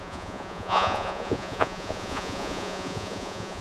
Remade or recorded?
remade